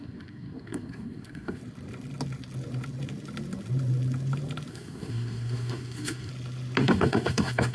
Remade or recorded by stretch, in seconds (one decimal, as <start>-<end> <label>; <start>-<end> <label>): 0.0-1.6 remade; 1.6-4.7 recorded; 4.7-6.3 remade; 6.3-6.8 recorded; 6.8-7.7 remade